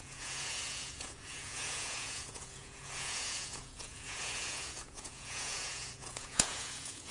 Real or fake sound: fake